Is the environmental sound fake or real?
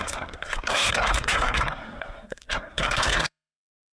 fake